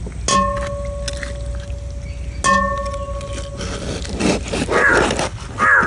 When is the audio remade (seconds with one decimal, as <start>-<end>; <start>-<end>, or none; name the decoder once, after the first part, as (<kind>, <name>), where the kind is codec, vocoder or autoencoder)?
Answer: none